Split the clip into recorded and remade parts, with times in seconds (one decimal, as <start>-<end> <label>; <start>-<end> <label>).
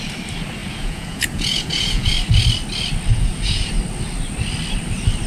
0.0-0.6 recorded; 0.6-2.1 remade; 2.1-3.1 recorded; 3.1-3.7 remade; 3.7-5.3 recorded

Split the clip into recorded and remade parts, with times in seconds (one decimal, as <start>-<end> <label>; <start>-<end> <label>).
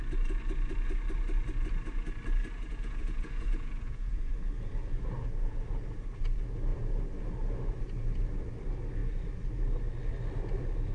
0.0-2.7 recorded; 2.7-4.2 remade; 4.2-10.9 recorded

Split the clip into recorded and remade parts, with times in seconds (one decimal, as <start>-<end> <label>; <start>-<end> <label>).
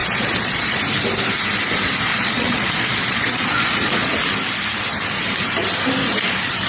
0.0-0.8 remade; 0.8-2.1 recorded; 2.1-4.1 remade; 4.1-6.0 recorded; 6.0-6.7 remade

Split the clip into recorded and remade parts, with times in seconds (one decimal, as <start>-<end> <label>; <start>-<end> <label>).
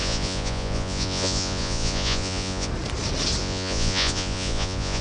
0.0-2.7 remade; 2.7-3.4 recorded; 3.4-5.0 remade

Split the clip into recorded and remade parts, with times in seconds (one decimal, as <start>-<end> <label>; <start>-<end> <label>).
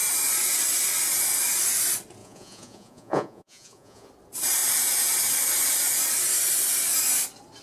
0.0-2.2 recorded; 2.2-4.1 remade; 4.1-7.6 recorded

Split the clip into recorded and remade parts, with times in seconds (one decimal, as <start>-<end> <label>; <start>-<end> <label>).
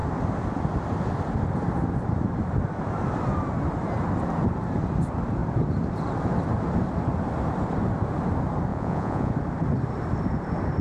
0.0-8.7 recorded; 8.7-9.3 remade; 9.3-10.8 recorded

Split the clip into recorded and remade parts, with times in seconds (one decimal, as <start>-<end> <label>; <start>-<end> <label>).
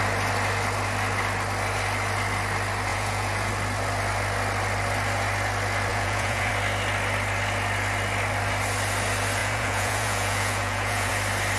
0.0-2.9 recorded; 2.9-3.5 remade; 3.5-5.9 recorded; 5.9-6.5 remade; 6.5-9.4 recorded; 9.4-11.1 remade; 11.1-11.6 recorded